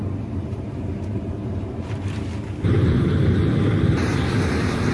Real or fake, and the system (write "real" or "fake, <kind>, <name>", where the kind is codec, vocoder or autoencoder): fake, vocoder, BigVGAN v2